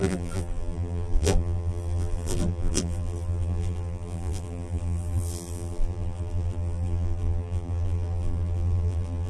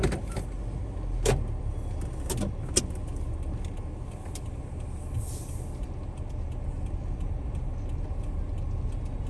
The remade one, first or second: first